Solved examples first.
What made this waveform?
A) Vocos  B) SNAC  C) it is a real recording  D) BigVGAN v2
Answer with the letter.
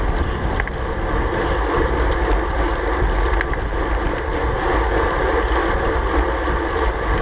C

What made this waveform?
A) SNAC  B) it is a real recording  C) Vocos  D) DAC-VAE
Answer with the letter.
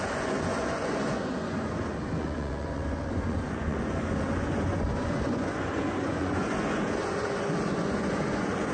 C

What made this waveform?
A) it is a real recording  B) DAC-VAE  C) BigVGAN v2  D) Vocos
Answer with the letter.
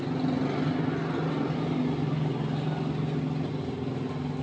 A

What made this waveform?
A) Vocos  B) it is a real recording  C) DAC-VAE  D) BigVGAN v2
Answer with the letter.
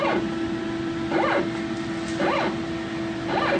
B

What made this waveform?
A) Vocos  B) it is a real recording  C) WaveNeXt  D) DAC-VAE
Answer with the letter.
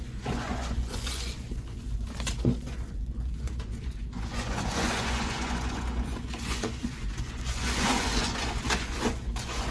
A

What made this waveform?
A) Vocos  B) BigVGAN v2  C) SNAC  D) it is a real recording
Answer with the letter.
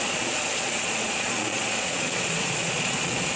A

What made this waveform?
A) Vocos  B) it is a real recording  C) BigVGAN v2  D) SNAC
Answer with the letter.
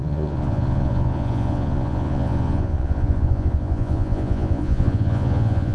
A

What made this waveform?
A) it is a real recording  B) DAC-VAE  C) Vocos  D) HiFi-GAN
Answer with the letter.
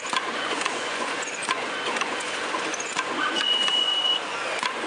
C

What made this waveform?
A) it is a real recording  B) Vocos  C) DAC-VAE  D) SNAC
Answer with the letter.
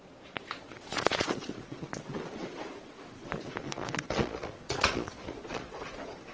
B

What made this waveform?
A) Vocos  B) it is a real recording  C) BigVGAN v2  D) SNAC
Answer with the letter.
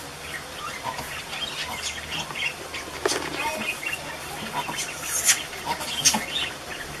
B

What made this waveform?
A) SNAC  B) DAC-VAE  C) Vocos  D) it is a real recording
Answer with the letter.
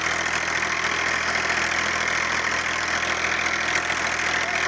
D